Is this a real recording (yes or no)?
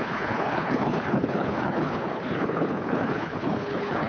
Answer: no